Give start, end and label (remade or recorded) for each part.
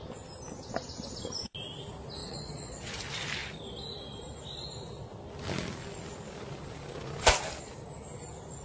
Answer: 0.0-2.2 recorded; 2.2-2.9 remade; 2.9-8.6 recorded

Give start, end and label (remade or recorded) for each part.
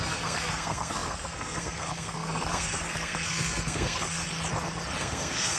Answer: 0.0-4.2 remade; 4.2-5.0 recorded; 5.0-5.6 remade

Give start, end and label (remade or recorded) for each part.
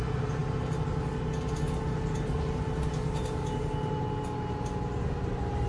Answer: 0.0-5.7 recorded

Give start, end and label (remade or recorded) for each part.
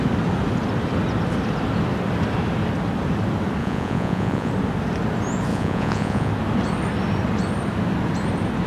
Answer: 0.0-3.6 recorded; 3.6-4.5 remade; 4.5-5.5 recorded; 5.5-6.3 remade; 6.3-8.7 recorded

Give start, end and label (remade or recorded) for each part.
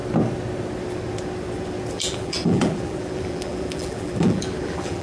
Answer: 0.0-1.9 recorded; 1.9-5.0 remade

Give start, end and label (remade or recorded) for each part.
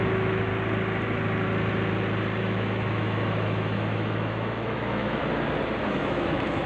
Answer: 0.0-0.5 remade; 0.5-2.4 recorded; 2.4-5.2 remade; 5.2-5.8 recorded; 5.8-6.7 remade